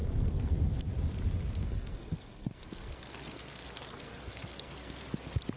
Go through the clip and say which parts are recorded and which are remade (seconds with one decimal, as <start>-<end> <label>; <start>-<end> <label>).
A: 0.0-0.6 remade; 0.6-1.6 recorded; 1.6-5.0 remade; 5.0-5.6 recorded